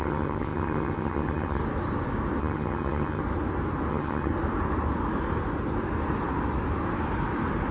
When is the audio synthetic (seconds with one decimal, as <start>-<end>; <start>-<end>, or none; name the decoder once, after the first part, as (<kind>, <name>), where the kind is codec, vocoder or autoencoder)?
0.0-1.6 (vocoder, HiFi-GAN); 2.4-3.2; 3.9-4.3